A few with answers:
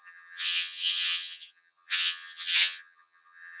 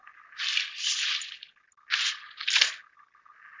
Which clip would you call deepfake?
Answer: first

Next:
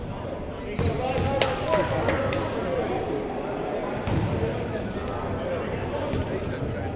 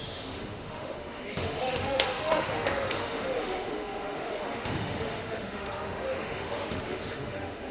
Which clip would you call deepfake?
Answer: second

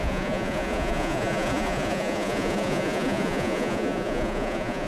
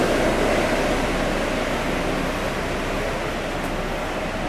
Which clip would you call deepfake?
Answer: first